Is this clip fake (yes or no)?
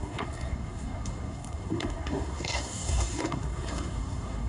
yes